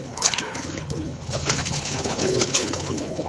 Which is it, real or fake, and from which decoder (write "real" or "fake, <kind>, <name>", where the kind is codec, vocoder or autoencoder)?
fake, codec, HILCodec